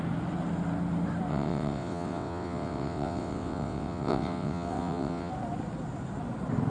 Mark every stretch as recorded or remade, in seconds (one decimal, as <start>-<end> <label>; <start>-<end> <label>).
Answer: 0.0-1.3 recorded; 1.3-5.3 remade; 5.3-6.7 recorded